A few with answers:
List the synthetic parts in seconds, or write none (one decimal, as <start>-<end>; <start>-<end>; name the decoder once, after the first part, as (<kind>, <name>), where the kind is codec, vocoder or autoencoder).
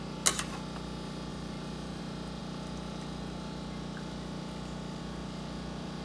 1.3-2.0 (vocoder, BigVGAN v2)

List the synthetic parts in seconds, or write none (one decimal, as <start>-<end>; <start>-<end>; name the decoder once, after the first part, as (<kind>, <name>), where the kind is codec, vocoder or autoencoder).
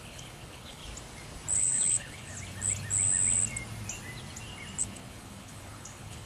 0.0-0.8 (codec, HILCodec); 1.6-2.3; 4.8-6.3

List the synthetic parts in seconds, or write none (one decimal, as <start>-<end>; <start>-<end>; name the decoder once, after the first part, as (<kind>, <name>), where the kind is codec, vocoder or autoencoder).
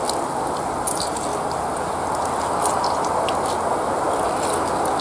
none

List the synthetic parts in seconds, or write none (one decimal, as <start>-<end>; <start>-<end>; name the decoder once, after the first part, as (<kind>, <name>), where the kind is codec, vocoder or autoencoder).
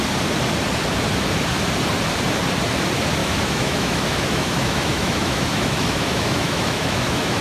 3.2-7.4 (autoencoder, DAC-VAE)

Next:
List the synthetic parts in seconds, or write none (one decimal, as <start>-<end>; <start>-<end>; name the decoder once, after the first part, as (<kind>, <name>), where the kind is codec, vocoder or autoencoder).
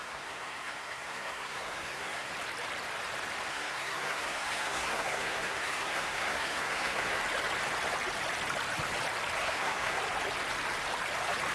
0.0-2.3 (codec, SNAC); 3.5-7.2; 9.4-10.0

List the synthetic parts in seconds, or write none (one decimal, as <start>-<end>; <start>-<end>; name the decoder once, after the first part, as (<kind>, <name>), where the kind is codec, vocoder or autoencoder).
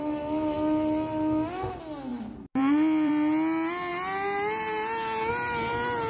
2.1-3.1 (vocoder, BigVGAN v2)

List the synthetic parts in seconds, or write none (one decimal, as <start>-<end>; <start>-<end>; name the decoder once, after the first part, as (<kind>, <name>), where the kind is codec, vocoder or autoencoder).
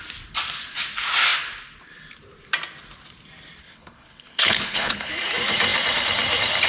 3.6-5.1 (codec, HILCodec)